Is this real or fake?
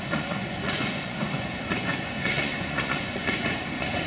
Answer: fake